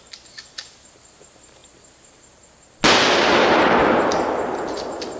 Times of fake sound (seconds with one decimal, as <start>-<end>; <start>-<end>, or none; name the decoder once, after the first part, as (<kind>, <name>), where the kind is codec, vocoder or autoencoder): none